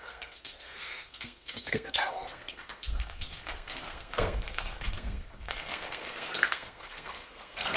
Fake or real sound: fake